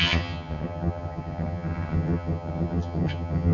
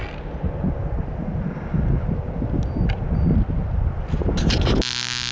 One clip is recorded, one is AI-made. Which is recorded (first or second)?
second